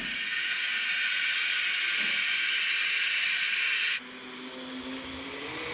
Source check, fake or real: real